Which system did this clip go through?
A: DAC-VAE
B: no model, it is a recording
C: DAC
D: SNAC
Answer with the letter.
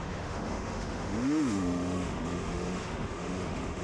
A